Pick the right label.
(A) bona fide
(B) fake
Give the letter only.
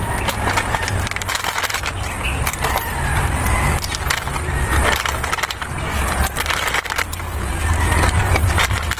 A